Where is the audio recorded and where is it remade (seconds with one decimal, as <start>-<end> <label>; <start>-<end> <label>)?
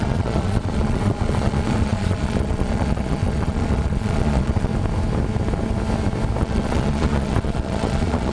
0.0-4.7 remade; 4.7-6.4 recorded; 6.4-8.3 remade